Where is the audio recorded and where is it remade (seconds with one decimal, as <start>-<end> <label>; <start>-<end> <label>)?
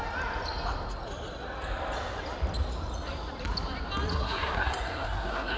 0.0-4.1 recorded; 4.1-5.6 remade